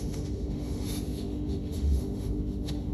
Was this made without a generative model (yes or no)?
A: no